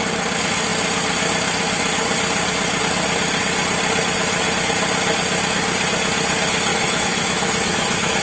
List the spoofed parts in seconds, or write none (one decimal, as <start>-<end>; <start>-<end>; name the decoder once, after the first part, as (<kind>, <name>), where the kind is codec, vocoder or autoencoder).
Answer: 6.7-8.2 (autoencoder, DAC-VAE)